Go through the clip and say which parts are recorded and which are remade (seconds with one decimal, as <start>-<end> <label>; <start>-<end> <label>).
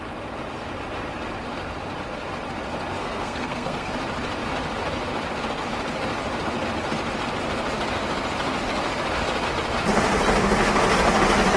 0.0-3.0 recorded; 3.0-3.9 remade; 3.9-11.6 recorded